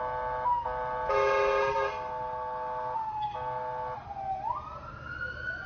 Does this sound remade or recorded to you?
recorded